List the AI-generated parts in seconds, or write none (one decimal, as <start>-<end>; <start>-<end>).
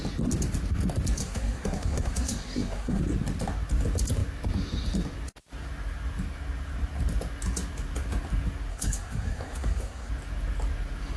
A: 1.2-3.0; 8.7-10.1